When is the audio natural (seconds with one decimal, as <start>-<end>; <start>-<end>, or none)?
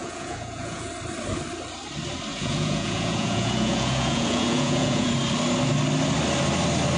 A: 0.9-2.3; 5.1-7.0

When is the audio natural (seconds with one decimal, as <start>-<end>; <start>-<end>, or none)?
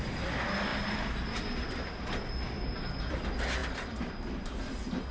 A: 0.0-5.1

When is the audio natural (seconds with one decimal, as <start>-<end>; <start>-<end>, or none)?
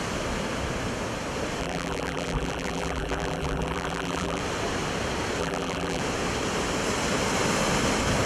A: 0.0-1.6; 4.4-5.4; 6.0-8.3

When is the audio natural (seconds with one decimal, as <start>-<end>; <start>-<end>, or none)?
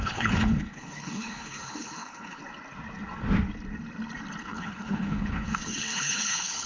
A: 2.4-4.4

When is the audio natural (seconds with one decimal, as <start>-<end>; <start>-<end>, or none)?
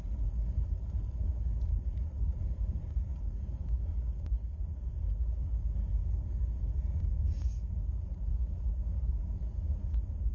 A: 0.0-10.3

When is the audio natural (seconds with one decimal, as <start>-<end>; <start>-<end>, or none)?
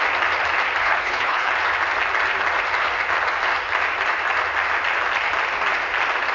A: 0.0-0.8; 1.5-6.3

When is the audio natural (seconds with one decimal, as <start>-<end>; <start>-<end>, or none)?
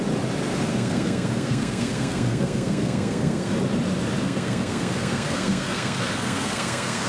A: 0.0-0.7; 3.5-4.2